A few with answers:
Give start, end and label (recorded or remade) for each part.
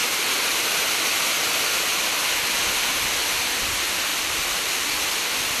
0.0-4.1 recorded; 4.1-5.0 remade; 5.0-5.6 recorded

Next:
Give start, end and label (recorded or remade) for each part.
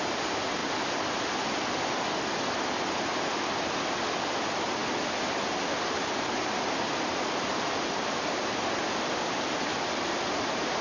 0.0-10.8 recorded